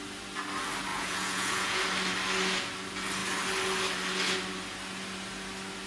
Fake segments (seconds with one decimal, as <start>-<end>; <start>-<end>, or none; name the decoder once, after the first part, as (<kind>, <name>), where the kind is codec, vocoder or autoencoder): 0.9-1.8 (vocoder, Vocos)

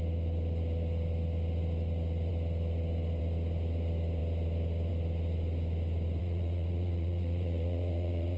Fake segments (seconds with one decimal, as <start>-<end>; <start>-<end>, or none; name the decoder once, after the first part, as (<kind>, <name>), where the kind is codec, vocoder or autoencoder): 6.2-8.4 (vocoder, Vocos)

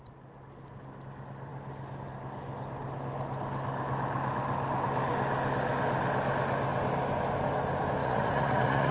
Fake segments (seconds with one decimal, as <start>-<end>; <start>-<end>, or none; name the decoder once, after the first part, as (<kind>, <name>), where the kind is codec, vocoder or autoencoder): 8.0-8.9 (vocoder, Vocos)

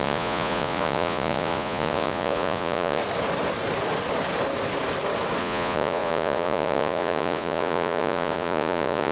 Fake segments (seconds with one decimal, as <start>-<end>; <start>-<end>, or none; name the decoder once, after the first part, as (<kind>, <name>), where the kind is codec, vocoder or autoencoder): 0.0-3.0 (vocoder, Vocos); 5.4-9.1

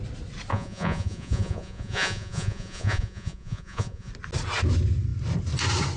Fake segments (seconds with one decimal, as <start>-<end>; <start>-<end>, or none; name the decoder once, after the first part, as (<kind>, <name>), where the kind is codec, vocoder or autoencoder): 0.5-4.1 (vocoder, Vocos)

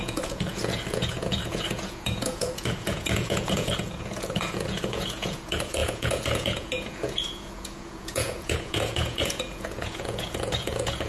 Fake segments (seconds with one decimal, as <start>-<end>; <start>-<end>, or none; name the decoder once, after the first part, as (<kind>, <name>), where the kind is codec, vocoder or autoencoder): 0.0-11.1 (vocoder, Vocos)

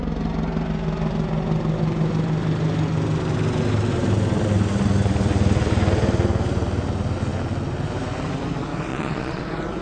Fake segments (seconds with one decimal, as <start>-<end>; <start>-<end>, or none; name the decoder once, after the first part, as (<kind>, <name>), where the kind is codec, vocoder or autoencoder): 8.9-9.4 (vocoder, Vocos)